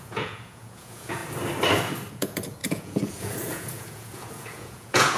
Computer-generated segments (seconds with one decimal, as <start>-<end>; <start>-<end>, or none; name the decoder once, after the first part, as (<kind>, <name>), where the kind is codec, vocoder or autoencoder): 0.0-1.2 (vocoder, Vocos); 2.1-5.2